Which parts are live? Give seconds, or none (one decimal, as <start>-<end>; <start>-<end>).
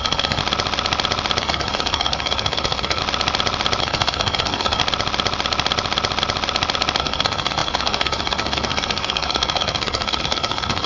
0.4-1.4; 3.0-3.8; 4.8-7.0